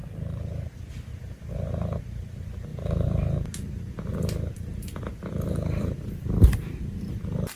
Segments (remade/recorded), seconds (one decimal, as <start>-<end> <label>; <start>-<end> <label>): 0.0-2.7 recorded; 2.7-3.2 remade; 3.2-4.1 recorded; 4.1-6.0 remade; 6.0-7.6 recorded